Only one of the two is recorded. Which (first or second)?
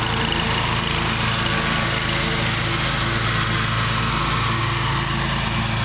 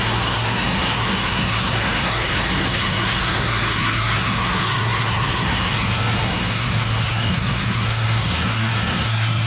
first